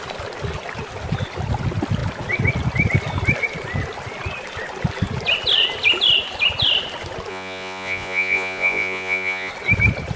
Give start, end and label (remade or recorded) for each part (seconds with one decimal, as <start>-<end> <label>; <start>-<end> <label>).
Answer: 0.0-7.3 recorded; 7.3-9.5 remade; 9.5-10.2 recorded